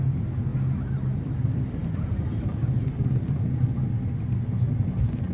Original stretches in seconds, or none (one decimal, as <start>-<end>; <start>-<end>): 0.0-5.3